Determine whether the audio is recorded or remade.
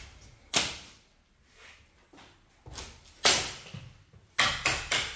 recorded